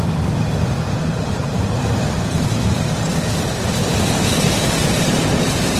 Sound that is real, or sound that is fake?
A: fake